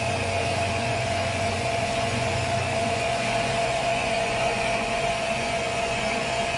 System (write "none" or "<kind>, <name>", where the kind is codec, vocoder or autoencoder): vocoder, Vocos